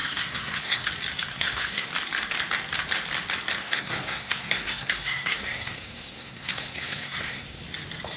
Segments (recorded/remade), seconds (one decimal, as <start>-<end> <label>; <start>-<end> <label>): 0.0-0.9 remade; 0.9-1.3 recorded; 1.3-1.9 remade; 1.9-3.6 recorded; 3.6-7.6 remade; 7.6-8.2 recorded